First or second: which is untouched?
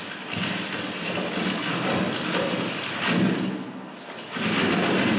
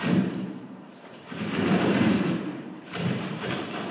first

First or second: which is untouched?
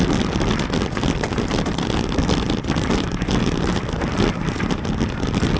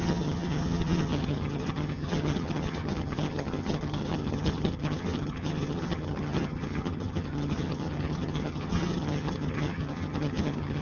first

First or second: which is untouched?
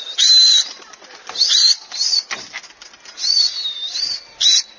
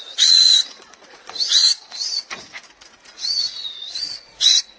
first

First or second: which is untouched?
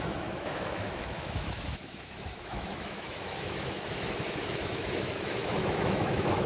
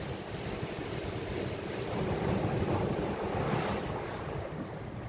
second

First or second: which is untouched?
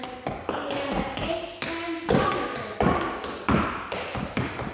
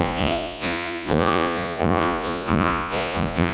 first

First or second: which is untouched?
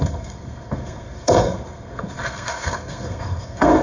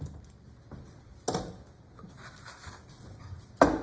second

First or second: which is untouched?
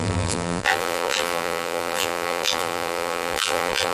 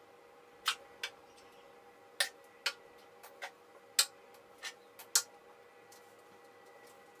second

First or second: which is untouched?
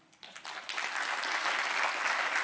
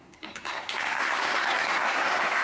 first